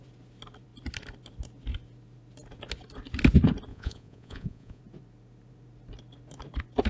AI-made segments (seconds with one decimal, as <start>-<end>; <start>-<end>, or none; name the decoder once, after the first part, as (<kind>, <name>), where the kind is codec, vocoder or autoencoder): 3.7-4.8 (vocoder, Vocos)